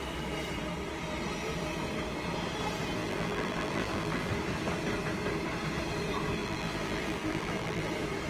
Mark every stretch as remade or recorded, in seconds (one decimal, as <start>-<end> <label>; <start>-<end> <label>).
0.0-3.0 recorded; 3.0-4.3 remade; 4.3-6.4 recorded; 6.4-7.9 remade; 7.9-8.3 recorded